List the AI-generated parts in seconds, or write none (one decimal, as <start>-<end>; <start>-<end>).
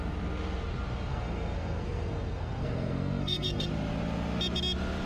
1.1-3.7